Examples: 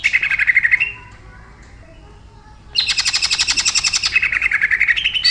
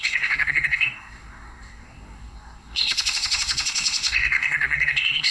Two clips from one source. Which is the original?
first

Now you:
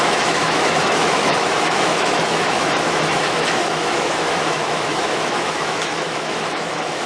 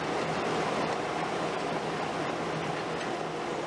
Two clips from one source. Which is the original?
second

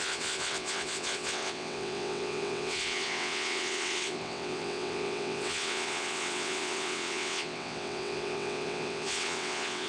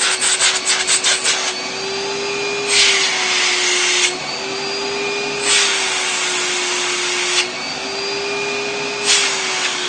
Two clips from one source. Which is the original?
second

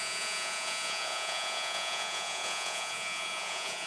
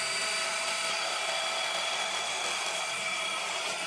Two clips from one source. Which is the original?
second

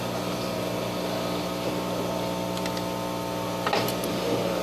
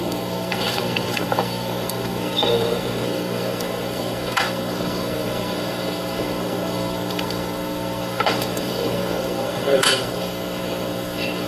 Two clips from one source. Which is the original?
first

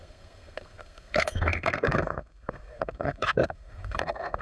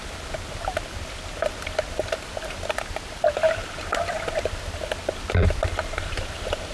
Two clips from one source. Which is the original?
second